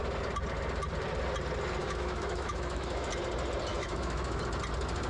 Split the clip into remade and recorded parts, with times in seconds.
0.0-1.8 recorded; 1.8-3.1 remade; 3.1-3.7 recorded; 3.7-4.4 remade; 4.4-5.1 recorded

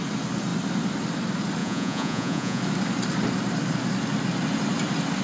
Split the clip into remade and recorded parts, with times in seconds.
0.0-1.6 recorded; 1.6-2.6 remade; 2.6-5.2 recorded

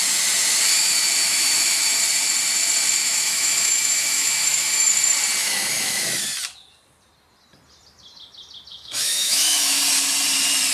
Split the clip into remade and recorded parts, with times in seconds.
0.0-1.2 recorded; 1.2-2.0 remade; 2.0-3.0 recorded; 3.0-4.9 remade; 4.9-5.4 recorded; 5.4-6.1 remade; 6.1-8.7 recorded; 8.7-9.8 remade; 9.8-10.7 recorded

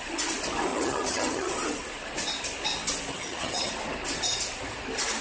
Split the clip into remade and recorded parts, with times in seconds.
0.0-0.7 recorded; 0.7-1.5 remade; 1.5-3.1 recorded; 3.1-3.7 remade; 3.7-5.2 recorded

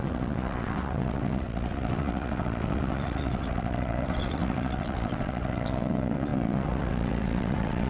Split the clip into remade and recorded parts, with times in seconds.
0.0-7.9 remade

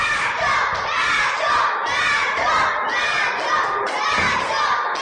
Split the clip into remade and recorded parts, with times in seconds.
0.0-5.0 recorded